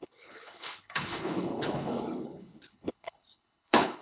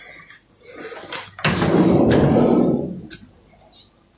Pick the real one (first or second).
second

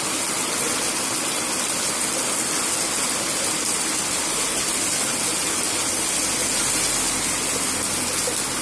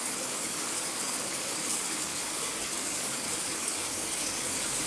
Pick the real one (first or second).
first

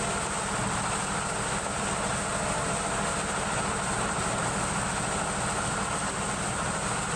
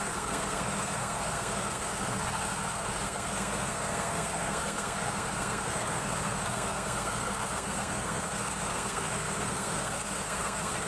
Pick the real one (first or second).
first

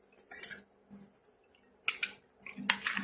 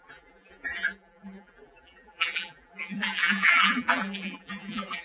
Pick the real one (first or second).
first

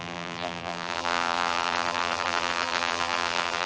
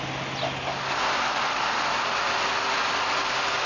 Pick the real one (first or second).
second